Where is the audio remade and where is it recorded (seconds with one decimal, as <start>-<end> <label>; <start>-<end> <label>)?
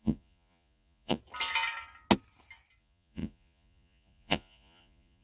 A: 0.0-1.2 remade; 1.2-2.8 recorded; 2.8-5.2 remade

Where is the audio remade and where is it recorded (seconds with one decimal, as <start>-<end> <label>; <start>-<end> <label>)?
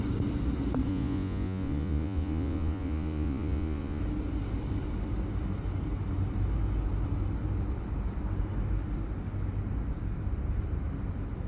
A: 0.0-0.9 recorded; 0.9-4.0 remade; 4.0-11.5 recorded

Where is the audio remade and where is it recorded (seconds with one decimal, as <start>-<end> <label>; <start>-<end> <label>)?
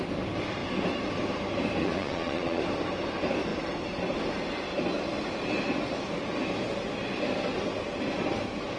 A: 0.0-1.8 recorded; 1.8-2.6 remade; 2.6-8.8 recorded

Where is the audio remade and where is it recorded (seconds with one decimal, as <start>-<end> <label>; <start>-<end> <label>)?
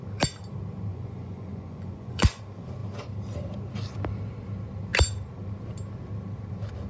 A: 0.0-0.9 recorded; 0.9-2.4 remade; 2.4-6.9 recorded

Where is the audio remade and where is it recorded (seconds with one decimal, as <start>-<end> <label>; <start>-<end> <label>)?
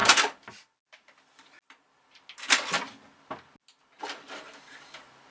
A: 0.0-5.3 recorded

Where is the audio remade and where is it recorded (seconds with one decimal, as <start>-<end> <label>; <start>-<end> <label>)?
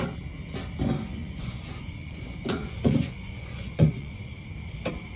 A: 0.0-1.2 recorded; 1.2-4.3 remade; 4.3-5.2 recorded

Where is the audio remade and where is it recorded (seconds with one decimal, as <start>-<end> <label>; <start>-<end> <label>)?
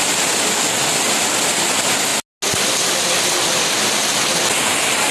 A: 0.0-5.1 recorded